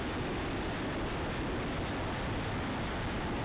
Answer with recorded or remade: recorded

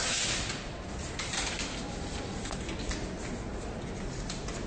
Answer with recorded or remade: recorded